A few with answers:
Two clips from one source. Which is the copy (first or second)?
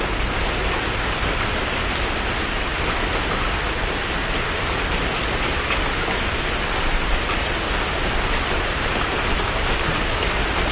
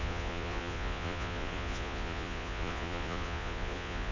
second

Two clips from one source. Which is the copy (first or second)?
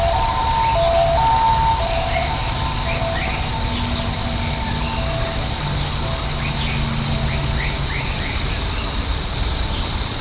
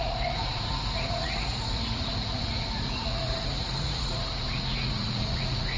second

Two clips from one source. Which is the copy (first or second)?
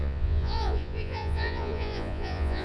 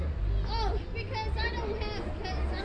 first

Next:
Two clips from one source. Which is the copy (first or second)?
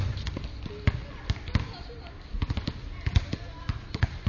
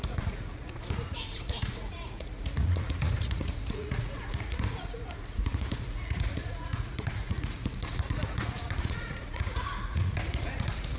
second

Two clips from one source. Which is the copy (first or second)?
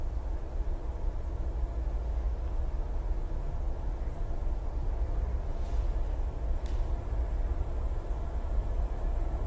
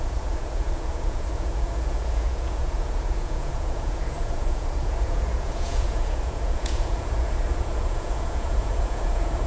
second